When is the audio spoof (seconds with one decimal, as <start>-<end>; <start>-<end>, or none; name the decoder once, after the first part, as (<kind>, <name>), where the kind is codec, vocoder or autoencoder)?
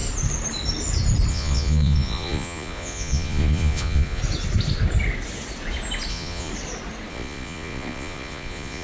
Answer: 1.3-4.2 (vocoder, Vocos); 6.1-6.5; 7.1-8.8